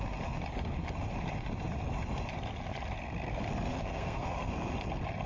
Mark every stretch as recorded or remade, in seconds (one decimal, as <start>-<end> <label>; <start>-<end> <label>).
0.0-3.7 recorded; 3.7-4.5 remade; 4.5-5.3 recorded